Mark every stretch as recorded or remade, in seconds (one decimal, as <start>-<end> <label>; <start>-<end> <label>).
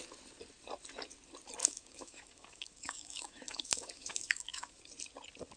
0.0-1.6 recorded; 1.6-4.8 remade; 4.8-5.6 recorded